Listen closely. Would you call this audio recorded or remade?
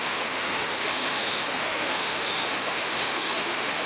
remade